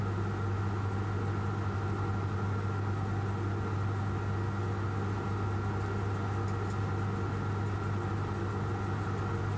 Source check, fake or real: real